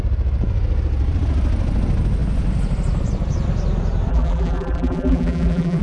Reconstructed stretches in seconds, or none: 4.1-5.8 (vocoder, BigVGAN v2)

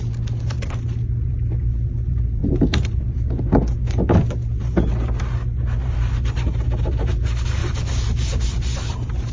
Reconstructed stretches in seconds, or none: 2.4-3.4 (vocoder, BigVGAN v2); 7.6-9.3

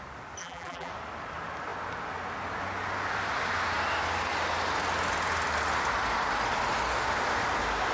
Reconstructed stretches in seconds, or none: 0.4-0.9 (vocoder, BigVGAN v2)

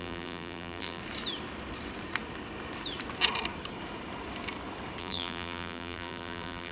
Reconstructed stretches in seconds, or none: 0.0-1.0 (vocoder, BigVGAN v2); 5.0-6.7

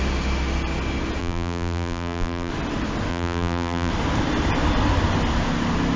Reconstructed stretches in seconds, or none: 1.2-2.5 (vocoder, BigVGAN v2); 3.1-3.9